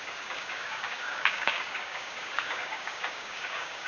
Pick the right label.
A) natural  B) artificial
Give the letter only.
B